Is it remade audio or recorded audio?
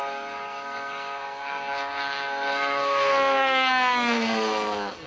remade